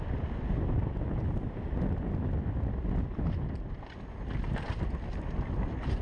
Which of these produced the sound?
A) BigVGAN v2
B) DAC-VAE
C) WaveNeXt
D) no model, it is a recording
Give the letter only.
D